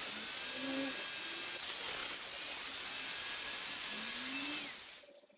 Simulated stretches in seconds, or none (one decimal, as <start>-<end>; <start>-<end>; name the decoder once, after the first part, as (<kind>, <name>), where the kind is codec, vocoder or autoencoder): none